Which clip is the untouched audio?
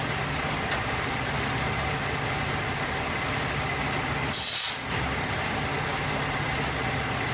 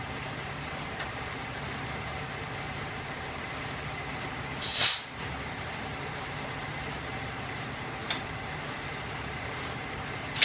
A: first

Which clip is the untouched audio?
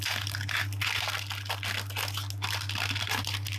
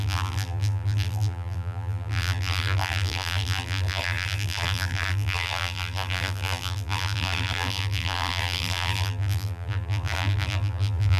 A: first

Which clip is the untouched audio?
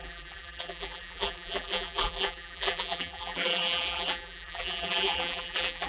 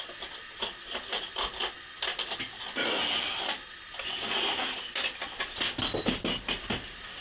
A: second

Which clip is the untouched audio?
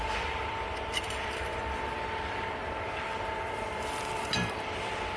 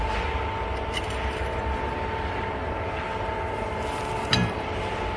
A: second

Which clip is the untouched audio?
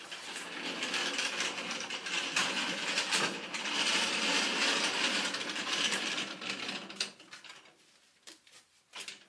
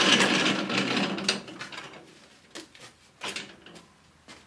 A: second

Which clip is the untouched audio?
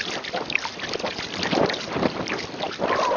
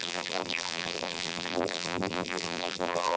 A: first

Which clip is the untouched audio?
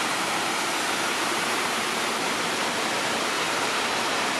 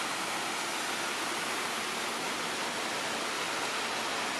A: second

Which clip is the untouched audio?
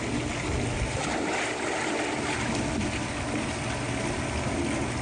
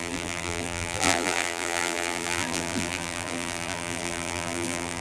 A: first